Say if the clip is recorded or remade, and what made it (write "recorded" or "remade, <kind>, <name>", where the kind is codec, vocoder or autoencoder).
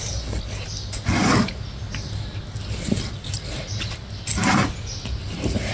recorded